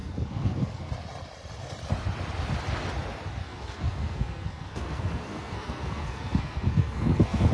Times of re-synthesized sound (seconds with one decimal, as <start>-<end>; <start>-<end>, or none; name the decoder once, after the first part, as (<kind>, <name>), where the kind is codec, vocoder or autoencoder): 0.0-0.9 (codec, SNAC); 3.4-7.5